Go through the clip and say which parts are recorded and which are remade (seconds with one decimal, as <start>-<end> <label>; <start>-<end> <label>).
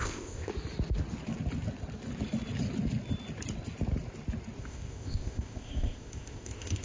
0.0-0.5 remade; 0.5-4.6 recorded; 4.6-6.8 remade